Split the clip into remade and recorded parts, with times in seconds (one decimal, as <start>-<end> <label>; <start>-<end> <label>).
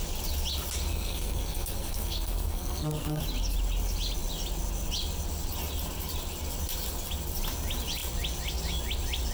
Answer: 0.0-0.9 recorded; 0.9-3.2 remade; 3.2-9.3 recorded